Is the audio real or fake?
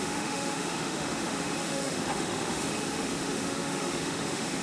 fake